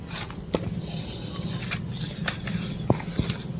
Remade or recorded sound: recorded